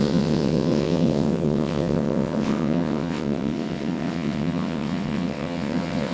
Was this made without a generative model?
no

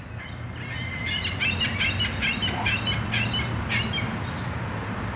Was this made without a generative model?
yes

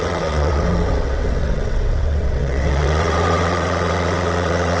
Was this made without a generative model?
no